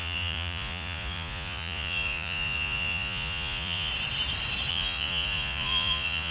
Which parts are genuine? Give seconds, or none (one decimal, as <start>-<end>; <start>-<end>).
3.9-4.7

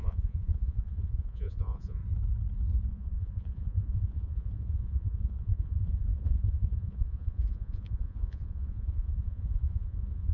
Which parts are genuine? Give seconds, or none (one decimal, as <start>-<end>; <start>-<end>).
2.0-2.9

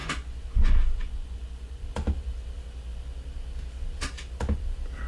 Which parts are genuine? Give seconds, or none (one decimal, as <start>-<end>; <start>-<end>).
1.9-5.1

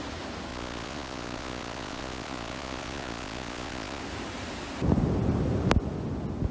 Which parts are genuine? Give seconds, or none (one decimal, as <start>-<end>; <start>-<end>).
0.0-0.5; 4.0-6.5

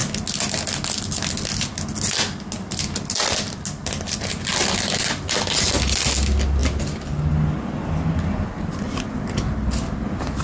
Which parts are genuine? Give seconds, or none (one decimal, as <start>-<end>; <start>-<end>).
0.0-10.4